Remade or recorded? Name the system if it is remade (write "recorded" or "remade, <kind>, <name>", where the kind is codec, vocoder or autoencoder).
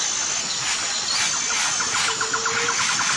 recorded